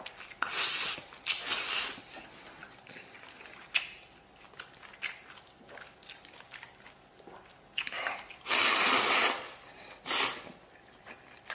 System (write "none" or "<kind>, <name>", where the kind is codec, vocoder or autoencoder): none